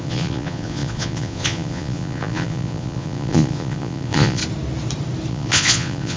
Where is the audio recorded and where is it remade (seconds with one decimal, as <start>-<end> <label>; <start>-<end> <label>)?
0.0-4.4 remade; 4.4-5.3 recorded; 5.3-6.2 remade